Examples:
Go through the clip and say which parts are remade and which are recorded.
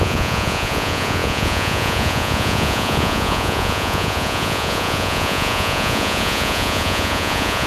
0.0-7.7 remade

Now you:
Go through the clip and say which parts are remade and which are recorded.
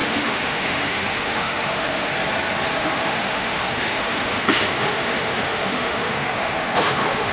0.0-2.1 remade; 2.1-2.8 recorded; 2.8-7.3 remade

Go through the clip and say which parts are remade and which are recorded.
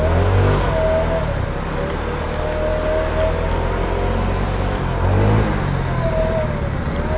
0.0-7.2 recorded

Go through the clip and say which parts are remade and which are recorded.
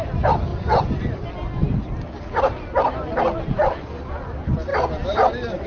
0.0-0.5 recorded; 0.5-1.2 remade; 1.2-5.7 recorded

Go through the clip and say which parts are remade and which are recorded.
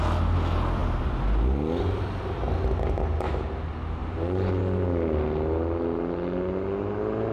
0.0-4.0 recorded; 4.0-4.6 remade; 4.6-7.3 recorded